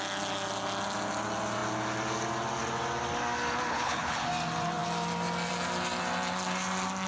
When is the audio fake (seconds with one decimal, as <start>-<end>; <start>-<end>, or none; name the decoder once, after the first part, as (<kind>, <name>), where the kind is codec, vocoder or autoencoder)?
3.7-4.3 (codec, HILCodec)